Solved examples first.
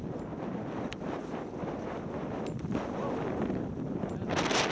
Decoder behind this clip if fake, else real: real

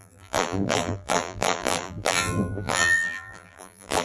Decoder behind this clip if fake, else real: fake, vocoder, BigVGAN v2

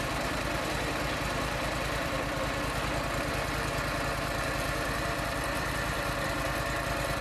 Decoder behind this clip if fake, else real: fake, vocoder, BigVGAN v2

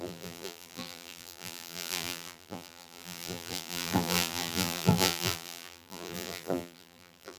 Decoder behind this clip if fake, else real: fake, vocoder, BigVGAN v2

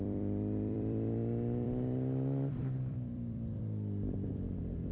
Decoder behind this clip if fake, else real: fake, vocoder, BigVGAN v2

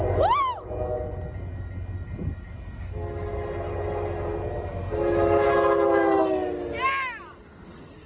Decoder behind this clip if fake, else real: real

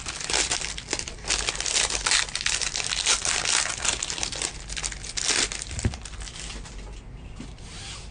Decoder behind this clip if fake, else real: real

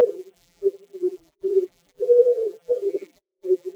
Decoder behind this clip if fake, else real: fake, vocoder, BigVGAN v2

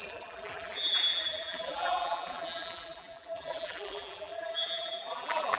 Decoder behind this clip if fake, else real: fake, vocoder, BigVGAN v2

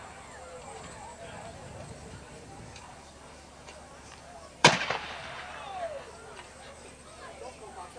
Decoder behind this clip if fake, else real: fake, vocoder, BigVGAN v2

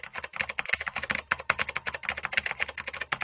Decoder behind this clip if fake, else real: real